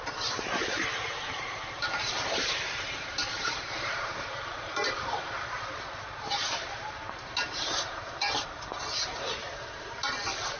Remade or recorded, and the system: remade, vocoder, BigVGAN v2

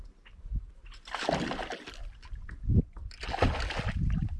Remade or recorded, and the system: recorded